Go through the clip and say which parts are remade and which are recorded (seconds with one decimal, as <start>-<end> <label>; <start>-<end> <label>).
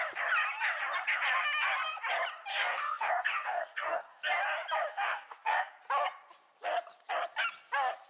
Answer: 0.0-2.5 recorded; 2.5-4.4 remade; 4.4-4.9 recorded; 4.9-5.7 remade; 5.7-8.1 recorded